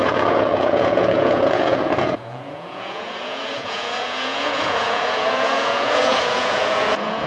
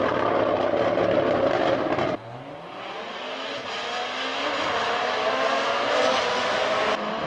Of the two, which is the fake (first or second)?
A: first